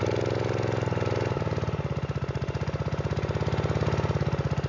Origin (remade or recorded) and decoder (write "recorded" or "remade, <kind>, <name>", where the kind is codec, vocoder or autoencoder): recorded